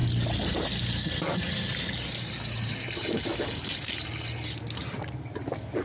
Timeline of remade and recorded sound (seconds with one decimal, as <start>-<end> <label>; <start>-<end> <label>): 0.0-5.8 recorded